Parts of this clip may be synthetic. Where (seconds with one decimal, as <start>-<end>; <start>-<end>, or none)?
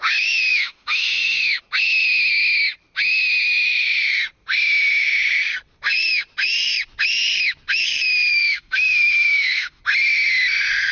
0.5-1.6; 8.3-9.8